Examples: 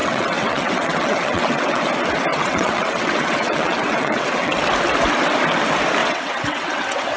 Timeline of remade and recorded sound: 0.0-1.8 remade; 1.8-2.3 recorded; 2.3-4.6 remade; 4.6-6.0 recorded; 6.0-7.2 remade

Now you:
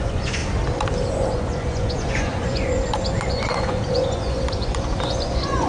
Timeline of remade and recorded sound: 0.0-0.4 remade; 0.4-1.1 recorded; 1.1-5.7 remade

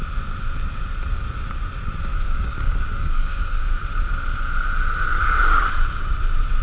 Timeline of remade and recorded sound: 0.0-2.1 recorded; 2.1-3.8 remade; 3.8-5.1 recorded; 5.1-5.7 remade; 5.7-6.6 recorded

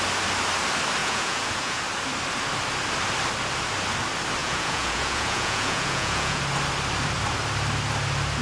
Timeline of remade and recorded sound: 0.0-1.0 recorded; 1.0-1.8 remade; 1.8-4.4 recorded; 4.4-6.4 remade; 6.4-8.4 recorded

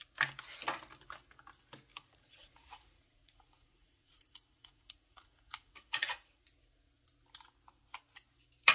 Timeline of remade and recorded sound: 0.0-1.9 recorded; 1.9-6.5 remade; 6.5-8.7 recorded

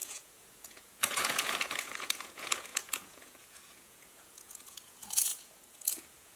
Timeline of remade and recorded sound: 0.0-6.4 remade

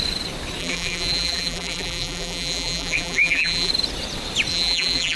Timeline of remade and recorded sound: 0.0-0.6 recorded; 0.6-3.7 remade; 3.7-4.5 recorded; 4.5-5.2 remade

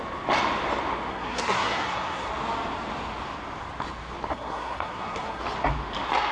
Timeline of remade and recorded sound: 0.0-1.1 recorded; 1.1-2.3 remade; 2.3-4.3 recorded; 4.3-5.4 remade; 5.4-6.3 recorded